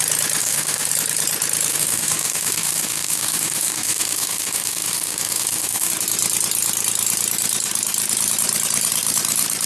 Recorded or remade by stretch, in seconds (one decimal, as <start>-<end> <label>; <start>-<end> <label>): 0.0-0.4 recorded; 0.4-0.9 remade; 0.9-1.7 recorded; 1.7-5.9 remade; 5.9-9.7 recorded